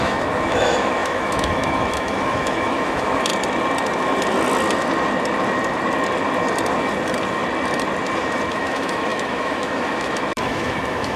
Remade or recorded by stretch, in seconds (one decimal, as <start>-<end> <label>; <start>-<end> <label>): 0.0-3.3 remade; 3.3-8.5 recorded; 8.5-11.2 remade